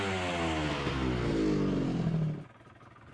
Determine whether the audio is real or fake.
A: real